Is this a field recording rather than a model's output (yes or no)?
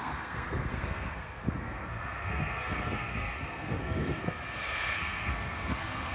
no